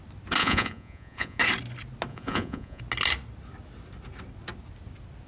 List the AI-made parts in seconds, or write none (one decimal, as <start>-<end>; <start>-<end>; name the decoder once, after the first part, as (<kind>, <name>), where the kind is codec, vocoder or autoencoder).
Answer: 0.4-1.4 (vocoder, Vocos); 2.1-2.8

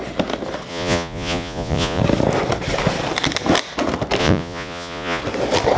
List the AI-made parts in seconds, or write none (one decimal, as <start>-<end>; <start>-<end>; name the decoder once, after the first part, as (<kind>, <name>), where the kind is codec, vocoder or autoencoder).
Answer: 0.7-2.0 (vocoder, Vocos); 4.2-5.2